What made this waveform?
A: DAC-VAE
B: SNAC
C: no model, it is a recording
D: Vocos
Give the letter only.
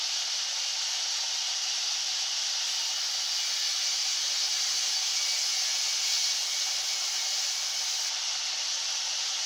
C